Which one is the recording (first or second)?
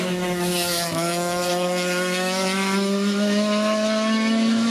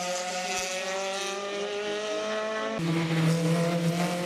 second